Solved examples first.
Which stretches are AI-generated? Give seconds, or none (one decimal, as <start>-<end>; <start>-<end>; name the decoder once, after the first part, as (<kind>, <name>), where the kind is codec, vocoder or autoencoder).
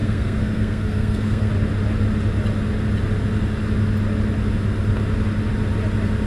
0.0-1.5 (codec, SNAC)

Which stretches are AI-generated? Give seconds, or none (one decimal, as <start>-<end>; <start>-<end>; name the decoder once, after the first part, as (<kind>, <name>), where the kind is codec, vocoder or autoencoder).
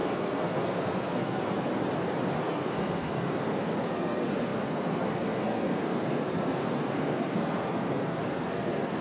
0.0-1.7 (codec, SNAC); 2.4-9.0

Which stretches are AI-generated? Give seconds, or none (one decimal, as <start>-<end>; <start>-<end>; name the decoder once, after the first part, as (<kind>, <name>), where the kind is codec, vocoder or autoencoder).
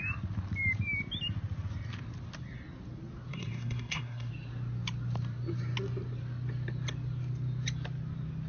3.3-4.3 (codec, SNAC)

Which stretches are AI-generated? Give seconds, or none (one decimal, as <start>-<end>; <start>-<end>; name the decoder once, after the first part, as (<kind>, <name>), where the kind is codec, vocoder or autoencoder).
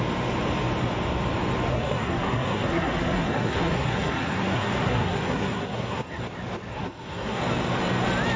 1.7-6.2 (codec, SNAC); 6.7-7.4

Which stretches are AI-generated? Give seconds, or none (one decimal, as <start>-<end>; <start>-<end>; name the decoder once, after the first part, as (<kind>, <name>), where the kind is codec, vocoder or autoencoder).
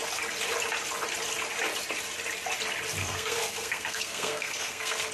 3.0-5.1 (codec, SNAC)